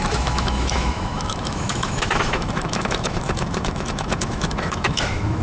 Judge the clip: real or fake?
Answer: fake